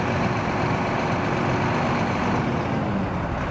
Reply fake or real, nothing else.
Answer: real